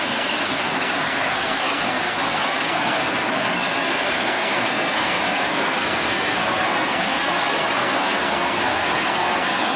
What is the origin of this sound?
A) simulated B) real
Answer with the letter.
A